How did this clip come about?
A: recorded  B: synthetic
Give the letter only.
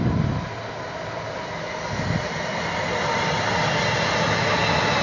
A